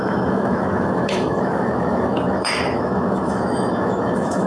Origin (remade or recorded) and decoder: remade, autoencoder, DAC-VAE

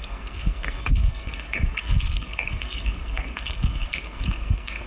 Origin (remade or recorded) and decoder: remade, codec, SNAC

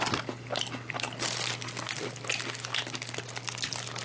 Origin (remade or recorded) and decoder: recorded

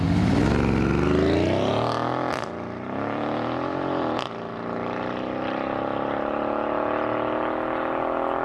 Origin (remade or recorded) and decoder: recorded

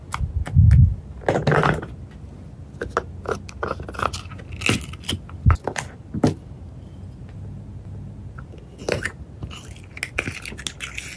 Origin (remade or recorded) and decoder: recorded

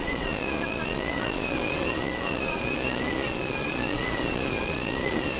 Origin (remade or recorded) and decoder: remade, vocoder, Vocos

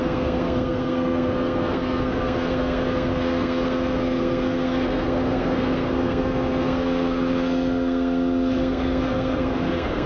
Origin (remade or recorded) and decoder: remade, codec, SNAC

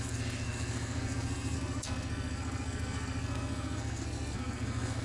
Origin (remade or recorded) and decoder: remade, codec, SNAC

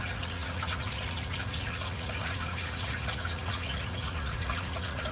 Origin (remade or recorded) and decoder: remade, vocoder, Vocos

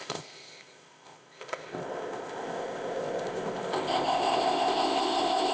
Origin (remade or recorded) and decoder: remade, codec, ZipCodec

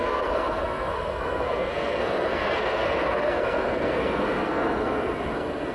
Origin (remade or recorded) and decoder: remade, codec, SNAC